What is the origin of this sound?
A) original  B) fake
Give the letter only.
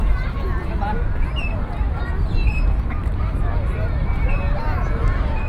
B